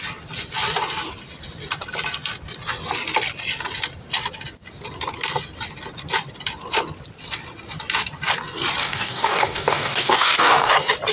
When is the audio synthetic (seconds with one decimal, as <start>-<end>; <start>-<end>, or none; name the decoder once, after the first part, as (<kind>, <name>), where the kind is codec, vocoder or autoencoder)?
8.8-10.7 (codec, DAC)